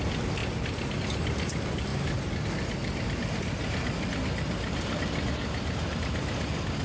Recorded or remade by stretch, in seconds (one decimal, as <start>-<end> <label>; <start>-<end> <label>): 0.0-6.8 recorded